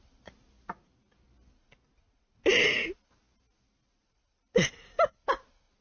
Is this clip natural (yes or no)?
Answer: yes